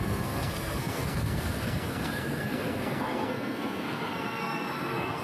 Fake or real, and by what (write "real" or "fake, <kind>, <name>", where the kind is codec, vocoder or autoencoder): fake, codec, SNAC